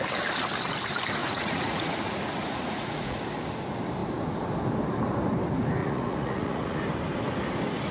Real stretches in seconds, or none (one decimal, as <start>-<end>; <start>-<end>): 0.0-1.2; 3.2-5.8; 6.8-7.9